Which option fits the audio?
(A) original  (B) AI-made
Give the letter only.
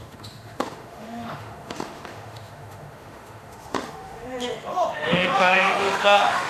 B